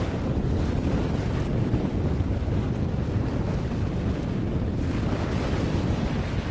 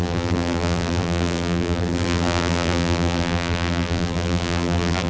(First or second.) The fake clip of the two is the second